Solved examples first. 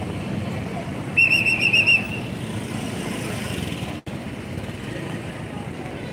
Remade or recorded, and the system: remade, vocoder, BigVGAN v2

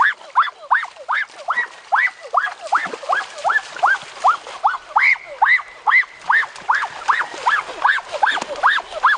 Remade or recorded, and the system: recorded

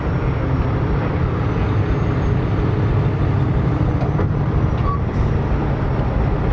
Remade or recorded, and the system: recorded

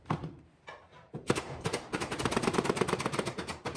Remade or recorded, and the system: remade, vocoder, BigVGAN v2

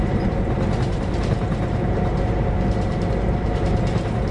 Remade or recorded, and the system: remade, vocoder, BigVGAN v2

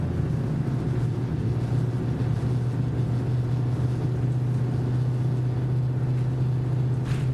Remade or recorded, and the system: recorded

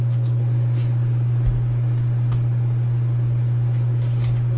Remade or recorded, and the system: recorded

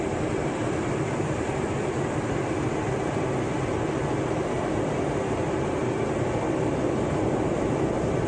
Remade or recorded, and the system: recorded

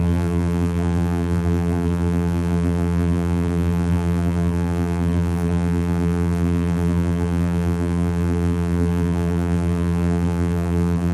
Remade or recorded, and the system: remade, vocoder, BigVGAN v2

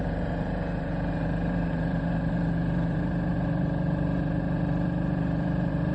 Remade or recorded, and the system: remade, vocoder, BigVGAN v2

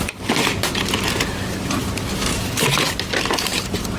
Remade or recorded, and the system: recorded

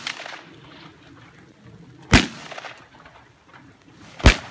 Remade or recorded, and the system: recorded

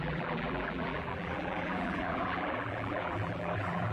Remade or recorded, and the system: remade, vocoder, BigVGAN v2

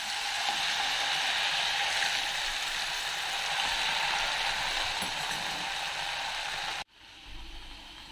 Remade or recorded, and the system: recorded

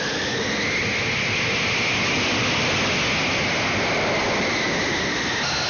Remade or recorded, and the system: recorded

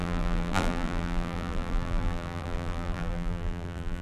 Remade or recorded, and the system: remade, vocoder, BigVGAN v2